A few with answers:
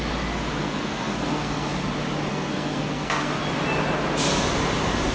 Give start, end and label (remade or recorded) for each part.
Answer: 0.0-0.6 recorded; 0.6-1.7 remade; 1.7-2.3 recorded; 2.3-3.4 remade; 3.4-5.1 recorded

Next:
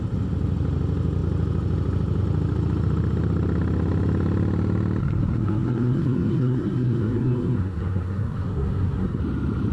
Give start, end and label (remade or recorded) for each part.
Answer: 0.0-5.0 recorded; 5.0-9.2 remade; 9.2-9.7 recorded

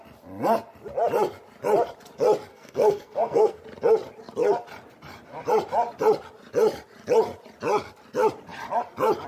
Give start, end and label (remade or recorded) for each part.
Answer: 0.0-2.5 recorded; 2.5-3.6 remade; 3.6-9.3 recorded